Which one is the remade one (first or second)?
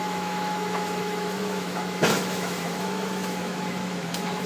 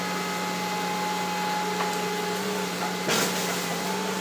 first